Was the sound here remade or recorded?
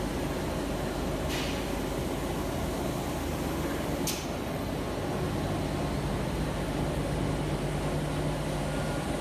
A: recorded